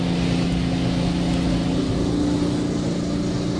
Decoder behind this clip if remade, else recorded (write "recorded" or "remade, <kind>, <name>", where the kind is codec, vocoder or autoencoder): recorded